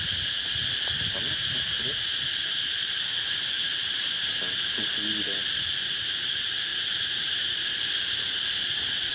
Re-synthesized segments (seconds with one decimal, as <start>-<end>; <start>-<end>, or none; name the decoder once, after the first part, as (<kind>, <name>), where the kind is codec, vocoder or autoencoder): none